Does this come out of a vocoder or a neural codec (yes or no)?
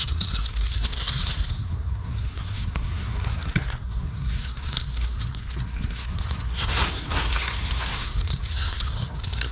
yes